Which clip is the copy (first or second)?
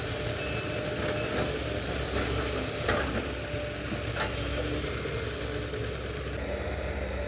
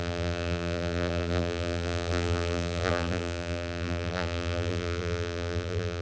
second